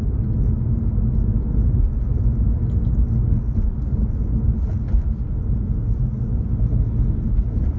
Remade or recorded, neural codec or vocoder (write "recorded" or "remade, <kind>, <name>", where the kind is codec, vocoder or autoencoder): recorded